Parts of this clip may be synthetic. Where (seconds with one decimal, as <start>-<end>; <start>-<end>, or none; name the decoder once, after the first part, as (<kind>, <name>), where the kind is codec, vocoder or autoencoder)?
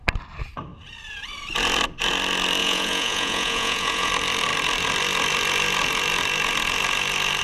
2.6-4.1 (vocoder, Vocos)